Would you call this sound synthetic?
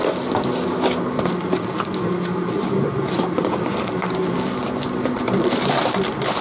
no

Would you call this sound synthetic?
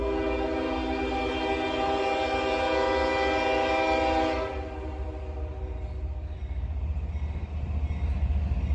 no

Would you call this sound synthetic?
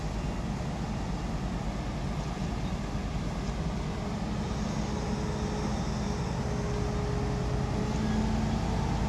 no